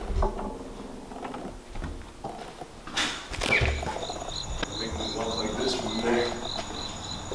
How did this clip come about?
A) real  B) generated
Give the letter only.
A